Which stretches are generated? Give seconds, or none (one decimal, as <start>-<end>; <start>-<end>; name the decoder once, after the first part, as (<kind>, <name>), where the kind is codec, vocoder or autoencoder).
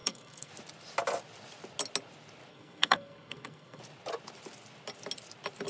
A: 0.0-0.5 (codec, SNAC); 2.5-3.8